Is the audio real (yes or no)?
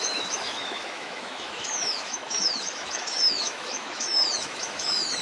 no